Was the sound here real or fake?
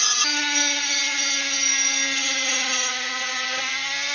real